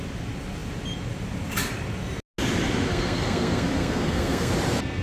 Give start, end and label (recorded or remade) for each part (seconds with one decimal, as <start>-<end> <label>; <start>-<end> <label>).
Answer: 0.0-2.9 recorded; 2.9-4.5 remade; 4.5-5.0 recorded